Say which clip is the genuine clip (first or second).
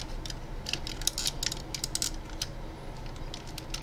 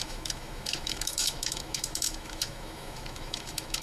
first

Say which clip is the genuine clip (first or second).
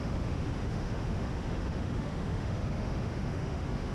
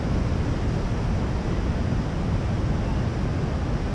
second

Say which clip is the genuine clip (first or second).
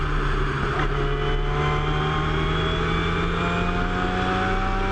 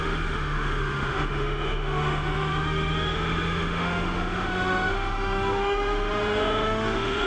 first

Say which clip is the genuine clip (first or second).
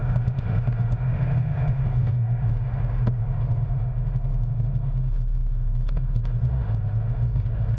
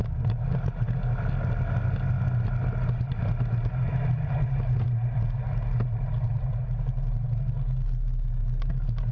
second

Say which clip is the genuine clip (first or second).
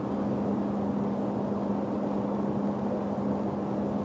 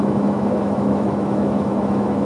first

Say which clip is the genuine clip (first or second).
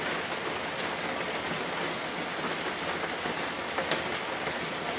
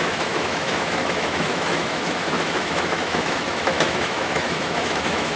first